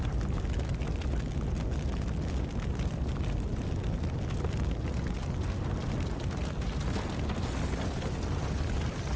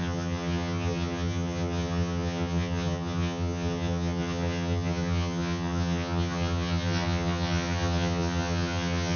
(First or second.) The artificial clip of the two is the second